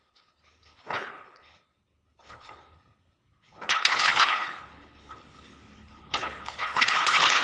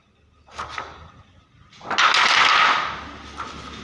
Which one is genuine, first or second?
second